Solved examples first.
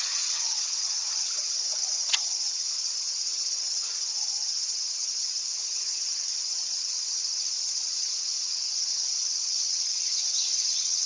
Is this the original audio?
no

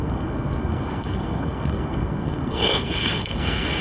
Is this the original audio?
no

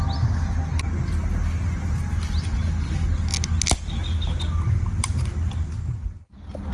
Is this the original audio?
yes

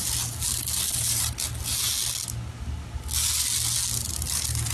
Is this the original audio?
yes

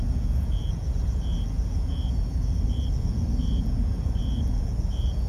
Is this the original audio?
no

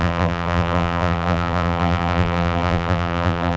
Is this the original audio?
no